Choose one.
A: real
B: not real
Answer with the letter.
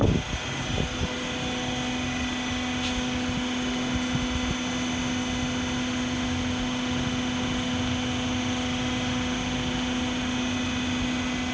A